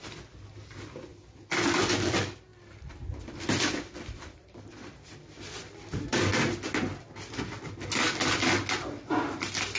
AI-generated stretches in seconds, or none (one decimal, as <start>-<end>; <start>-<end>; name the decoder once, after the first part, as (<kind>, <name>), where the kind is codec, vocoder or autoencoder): 0.0-2.5 (vocoder, BigVGAN v2); 3.3-6.3